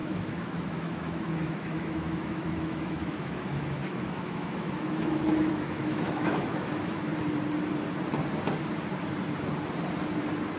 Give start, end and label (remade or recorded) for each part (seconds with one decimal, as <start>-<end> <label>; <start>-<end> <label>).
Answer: 0.0-7.1 remade; 7.1-10.6 recorded